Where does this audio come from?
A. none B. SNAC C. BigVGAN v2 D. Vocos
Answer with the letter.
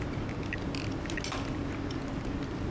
A